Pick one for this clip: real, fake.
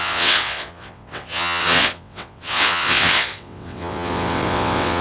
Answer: fake